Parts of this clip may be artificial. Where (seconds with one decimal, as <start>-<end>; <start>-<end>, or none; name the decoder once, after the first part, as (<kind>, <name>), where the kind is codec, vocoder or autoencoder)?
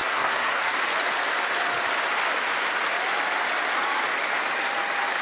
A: 0.0-0.7 (codec, SNAC)